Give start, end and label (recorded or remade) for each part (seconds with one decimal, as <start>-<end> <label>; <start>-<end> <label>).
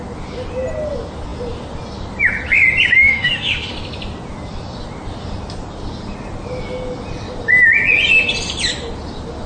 0.0-3.0 recorded; 3.0-3.7 remade; 3.7-9.5 recorded